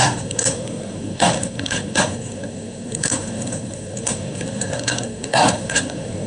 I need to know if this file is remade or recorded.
remade